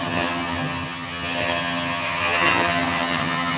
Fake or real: fake